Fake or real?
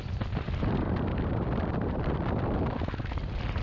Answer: fake